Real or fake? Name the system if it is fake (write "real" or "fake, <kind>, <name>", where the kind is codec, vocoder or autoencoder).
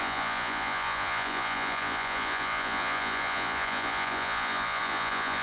fake, vocoder, Vocos